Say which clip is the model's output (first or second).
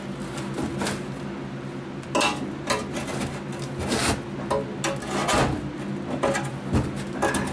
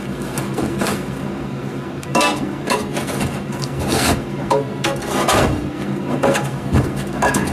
second